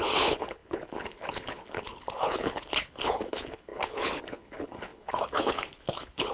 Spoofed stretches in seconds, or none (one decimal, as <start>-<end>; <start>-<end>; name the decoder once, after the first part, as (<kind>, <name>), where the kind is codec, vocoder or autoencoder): 0.0-6.3 (codec, HILCodec)

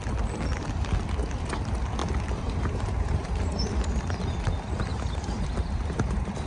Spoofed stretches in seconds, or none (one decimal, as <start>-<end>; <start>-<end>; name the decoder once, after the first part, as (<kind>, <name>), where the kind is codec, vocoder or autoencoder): 2.0-3.5 (vocoder, BigVGAN v2); 4.9-6.5

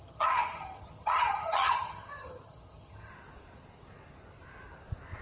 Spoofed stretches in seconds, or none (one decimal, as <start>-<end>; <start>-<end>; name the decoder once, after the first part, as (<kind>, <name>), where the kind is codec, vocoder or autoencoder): 0.0-3.1 (vocoder, HiFi-GAN)

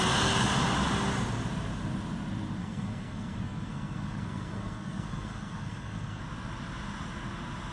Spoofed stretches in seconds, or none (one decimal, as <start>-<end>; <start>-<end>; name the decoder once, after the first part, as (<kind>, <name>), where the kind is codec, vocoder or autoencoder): 2.6-6.2 (codec, SNAC)

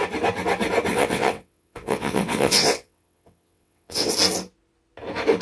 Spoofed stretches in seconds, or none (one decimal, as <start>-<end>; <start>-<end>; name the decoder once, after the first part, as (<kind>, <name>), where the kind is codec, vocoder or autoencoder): 0.9-4.1 (vocoder, WaveNeXt)